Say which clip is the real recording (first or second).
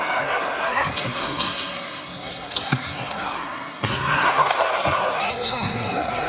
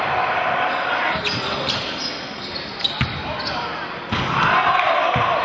second